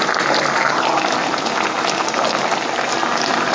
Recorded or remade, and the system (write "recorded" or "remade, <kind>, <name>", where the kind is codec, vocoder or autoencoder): recorded